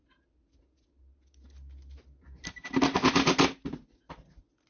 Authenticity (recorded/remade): recorded